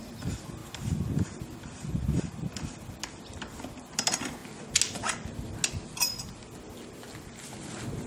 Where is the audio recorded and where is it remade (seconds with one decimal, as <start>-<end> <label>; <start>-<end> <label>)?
0.0-8.1 recorded